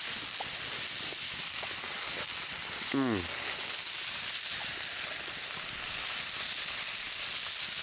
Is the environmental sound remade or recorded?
recorded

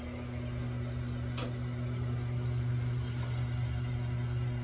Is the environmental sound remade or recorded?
recorded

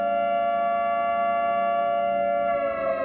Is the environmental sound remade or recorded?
recorded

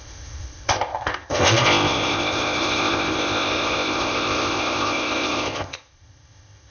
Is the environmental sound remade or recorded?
remade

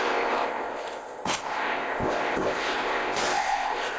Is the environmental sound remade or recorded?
remade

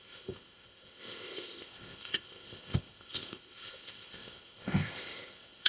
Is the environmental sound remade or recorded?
remade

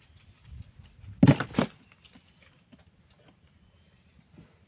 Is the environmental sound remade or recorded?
recorded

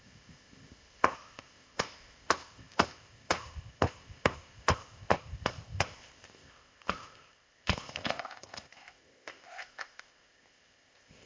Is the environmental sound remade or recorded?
remade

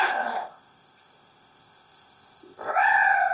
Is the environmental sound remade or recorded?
remade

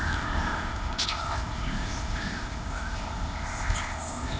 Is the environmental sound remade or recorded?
remade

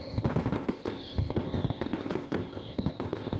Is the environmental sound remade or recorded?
remade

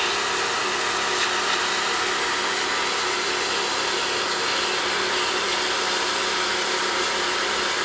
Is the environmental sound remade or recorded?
recorded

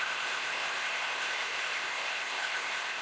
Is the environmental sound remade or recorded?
remade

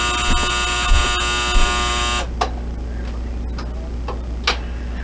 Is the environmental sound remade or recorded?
recorded